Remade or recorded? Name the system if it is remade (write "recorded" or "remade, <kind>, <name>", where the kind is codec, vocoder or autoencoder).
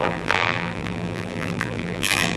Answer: remade, vocoder, BigVGAN v2